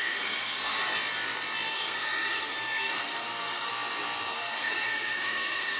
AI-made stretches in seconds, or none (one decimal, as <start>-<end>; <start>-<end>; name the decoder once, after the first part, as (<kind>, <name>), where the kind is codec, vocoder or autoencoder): 0.0-0.8 (codec, SNAC); 1.7-3.7; 4.3-5.8